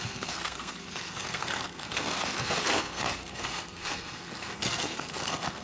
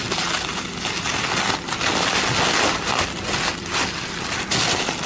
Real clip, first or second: second